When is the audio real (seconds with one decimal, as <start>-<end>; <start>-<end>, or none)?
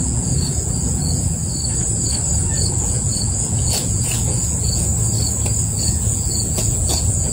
1.4-2.7; 4.9-5.6